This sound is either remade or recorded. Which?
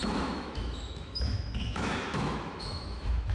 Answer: remade